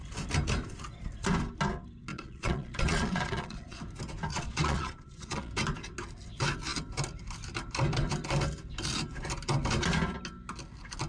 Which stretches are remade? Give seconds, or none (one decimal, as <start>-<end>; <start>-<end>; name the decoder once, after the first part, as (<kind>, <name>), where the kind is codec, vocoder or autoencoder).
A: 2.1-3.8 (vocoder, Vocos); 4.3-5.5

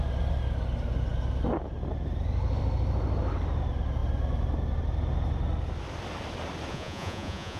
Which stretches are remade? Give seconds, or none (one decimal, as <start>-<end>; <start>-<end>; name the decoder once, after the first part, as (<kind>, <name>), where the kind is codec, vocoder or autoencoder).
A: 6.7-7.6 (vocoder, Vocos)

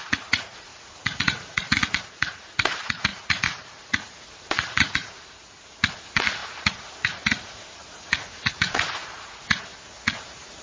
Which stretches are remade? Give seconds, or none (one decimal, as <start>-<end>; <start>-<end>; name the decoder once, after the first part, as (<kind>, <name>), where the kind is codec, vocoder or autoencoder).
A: 0.0-10.6 (vocoder, Vocos)

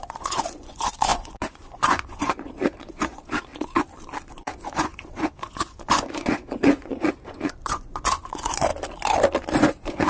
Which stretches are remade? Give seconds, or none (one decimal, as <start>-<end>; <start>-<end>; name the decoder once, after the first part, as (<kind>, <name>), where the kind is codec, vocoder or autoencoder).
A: 0.0-3.5 (vocoder, Vocos); 4.3-8.7; 9.6-10.1

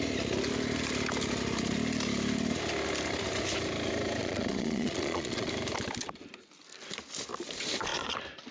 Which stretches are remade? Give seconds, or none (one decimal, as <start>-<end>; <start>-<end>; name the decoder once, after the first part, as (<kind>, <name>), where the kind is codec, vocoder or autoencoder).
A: 4.2-5.5 (vocoder, Vocos)

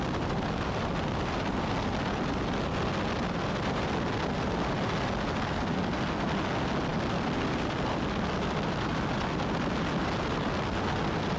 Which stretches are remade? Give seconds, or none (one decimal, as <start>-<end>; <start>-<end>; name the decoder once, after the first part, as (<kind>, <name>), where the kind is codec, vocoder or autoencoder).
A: none

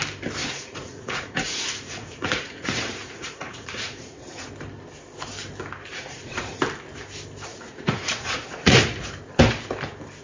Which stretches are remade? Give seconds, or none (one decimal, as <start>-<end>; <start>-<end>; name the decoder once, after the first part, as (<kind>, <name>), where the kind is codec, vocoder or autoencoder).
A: 0.4-4.5 (vocoder, Vocos); 5.9-6.6; 7.5-8.8